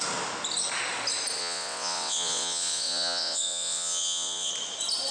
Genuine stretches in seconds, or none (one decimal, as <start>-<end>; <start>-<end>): 0.0-1.4; 4.5-5.1